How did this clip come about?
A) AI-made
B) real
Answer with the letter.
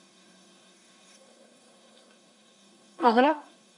A